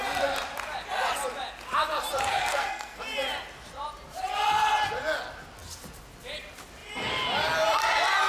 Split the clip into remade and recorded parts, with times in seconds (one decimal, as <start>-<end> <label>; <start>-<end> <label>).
0.0-2.3 recorded; 2.3-3.0 remade; 3.0-8.3 recorded